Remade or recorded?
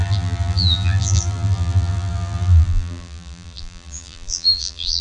remade